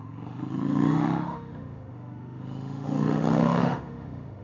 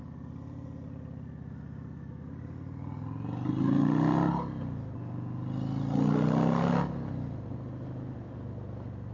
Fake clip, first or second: first